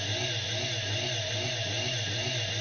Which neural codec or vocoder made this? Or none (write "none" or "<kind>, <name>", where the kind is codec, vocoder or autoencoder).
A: none